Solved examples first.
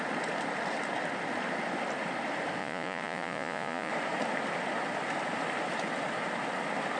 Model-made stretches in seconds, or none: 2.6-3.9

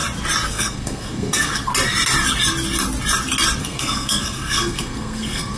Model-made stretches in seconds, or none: 0.5-1.7; 3.6-5.6

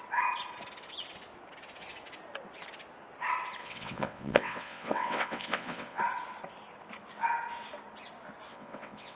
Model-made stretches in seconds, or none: 3.6-6.0; 8.5-9.2

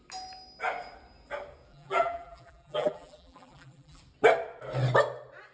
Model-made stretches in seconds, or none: 1.7-4.0

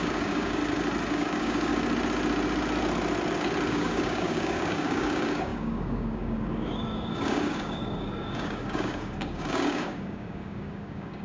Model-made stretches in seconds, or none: 0.0-0.6; 1.1-1.7; 3.7-11.2

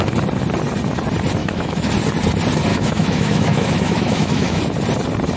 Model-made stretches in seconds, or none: 1.4-1.9; 2.7-4.6